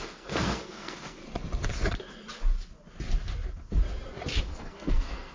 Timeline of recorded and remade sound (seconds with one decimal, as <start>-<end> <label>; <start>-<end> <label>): 0.0-1.2 remade; 1.2-4.4 recorded; 4.4-5.3 remade